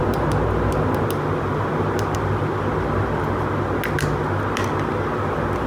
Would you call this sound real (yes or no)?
yes